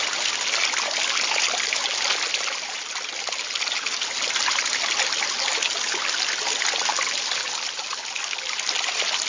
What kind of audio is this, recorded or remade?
recorded